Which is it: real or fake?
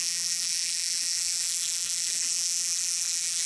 fake